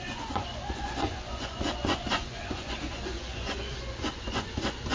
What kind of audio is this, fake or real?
fake